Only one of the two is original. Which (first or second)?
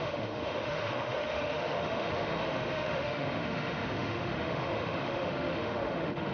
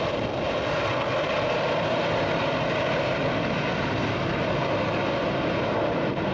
second